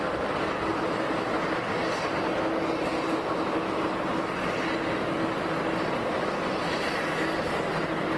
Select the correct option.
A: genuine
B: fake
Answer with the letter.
A